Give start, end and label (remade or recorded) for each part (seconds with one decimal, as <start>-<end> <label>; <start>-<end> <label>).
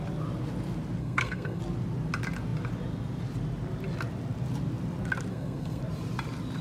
0.0-1.0 recorded; 1.0-1.6 remade; 1.6-5.3 recorded; 5.3-5.8 remade; 5.8-6.6 recorded